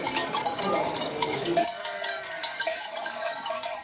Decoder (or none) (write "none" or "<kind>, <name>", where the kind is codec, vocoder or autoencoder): codec, DAC